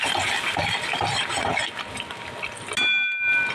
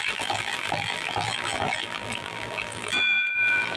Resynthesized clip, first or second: second